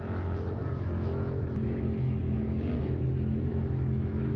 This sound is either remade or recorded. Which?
remade